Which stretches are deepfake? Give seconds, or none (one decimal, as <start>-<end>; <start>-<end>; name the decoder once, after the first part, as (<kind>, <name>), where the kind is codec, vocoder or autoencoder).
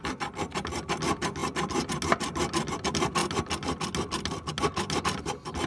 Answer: none